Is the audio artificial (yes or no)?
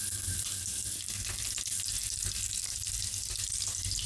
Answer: no